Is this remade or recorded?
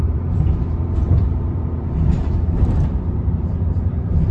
remade